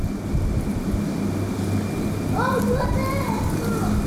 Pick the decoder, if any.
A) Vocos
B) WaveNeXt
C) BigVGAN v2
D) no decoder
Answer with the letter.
D